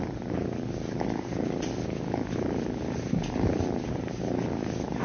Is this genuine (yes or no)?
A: yes